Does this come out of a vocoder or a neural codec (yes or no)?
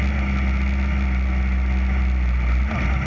no